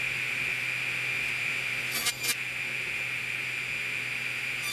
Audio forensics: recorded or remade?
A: recorded